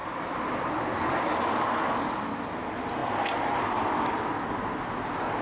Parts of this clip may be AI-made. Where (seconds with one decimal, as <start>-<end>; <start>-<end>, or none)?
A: none